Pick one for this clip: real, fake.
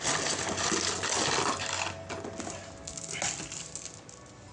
real